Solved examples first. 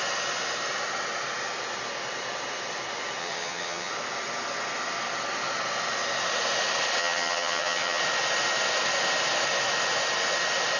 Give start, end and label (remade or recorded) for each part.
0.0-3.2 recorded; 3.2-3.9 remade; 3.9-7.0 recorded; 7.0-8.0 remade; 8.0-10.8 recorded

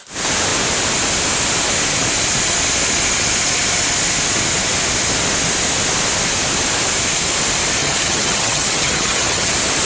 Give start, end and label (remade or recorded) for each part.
0.0-7.8 recorded; 7.8-9.5 remade; 9.5-9.9 recorded

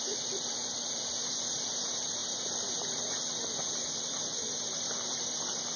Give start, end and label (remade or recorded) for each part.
0.0-5.8 recorded

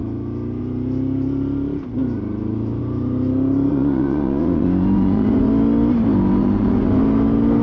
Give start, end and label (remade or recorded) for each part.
0.0-3.7 recorded; 3.7-5.5 remade; 5.5-6.4 recorded; 6.4-7.0 remade; 7.0-7.6 recorded

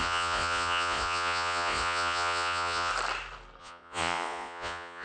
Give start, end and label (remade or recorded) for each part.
0.0-2.9 remade; 2.9-3.6 recorded; 3.6-5.0 remade